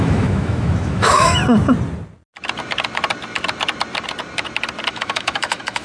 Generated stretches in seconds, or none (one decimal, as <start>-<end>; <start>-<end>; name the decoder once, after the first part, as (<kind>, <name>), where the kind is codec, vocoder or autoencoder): 0.0-1.4 (autoencoder, DAC-VAE); 4.9-5.8